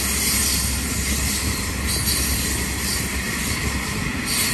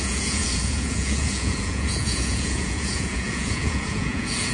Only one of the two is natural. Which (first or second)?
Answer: first